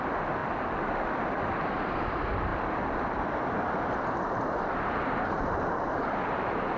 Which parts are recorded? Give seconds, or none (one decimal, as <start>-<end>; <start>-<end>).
0.0-6.8